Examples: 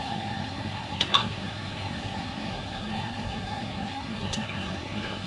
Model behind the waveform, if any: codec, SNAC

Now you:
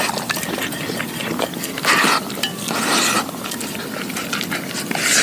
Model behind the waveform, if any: none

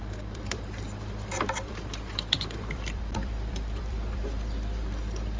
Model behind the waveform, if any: vocoder, BigVGAN v2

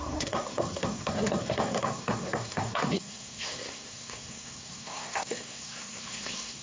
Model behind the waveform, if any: codec, SNAC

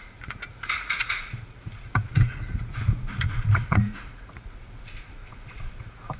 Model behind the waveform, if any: vocoder, Vocos